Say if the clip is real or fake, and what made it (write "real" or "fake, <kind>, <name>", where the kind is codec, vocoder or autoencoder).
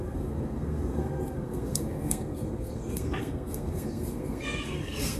fake, codec, SNAC